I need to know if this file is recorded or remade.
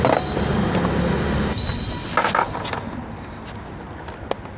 recorded